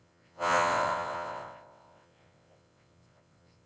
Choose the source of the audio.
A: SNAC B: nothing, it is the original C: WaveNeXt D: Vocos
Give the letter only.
C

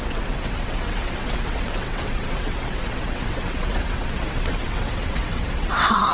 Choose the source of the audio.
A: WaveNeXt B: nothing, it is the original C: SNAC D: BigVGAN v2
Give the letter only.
A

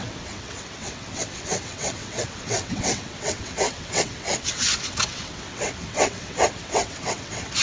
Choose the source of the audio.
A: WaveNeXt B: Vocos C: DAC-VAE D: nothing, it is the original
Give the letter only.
A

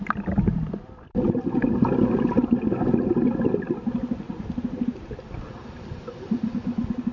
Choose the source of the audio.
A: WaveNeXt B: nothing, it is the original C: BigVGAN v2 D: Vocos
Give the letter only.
B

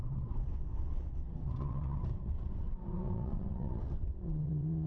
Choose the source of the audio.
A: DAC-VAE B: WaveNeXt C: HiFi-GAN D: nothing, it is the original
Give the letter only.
B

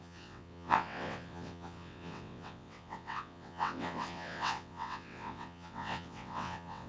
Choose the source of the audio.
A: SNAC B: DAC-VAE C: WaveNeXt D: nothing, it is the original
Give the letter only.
C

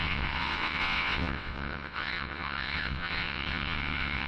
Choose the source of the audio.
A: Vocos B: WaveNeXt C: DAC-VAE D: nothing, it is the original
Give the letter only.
B